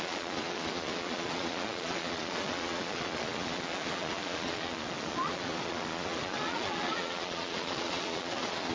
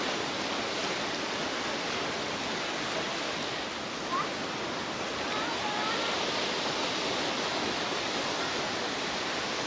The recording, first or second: second